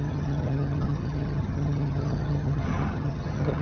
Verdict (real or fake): fake